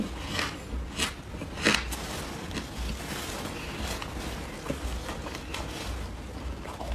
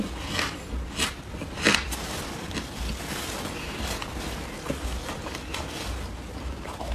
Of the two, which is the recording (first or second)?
first